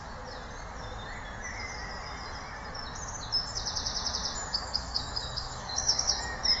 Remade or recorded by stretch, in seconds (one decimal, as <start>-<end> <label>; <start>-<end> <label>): 0.0-4.5 recorded; 4.5-6.1 remade; 6.1-6.6 recorded